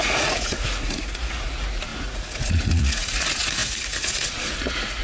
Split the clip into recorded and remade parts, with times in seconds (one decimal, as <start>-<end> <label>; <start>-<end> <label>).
0.0-5.0 remade